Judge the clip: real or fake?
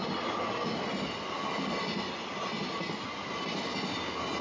real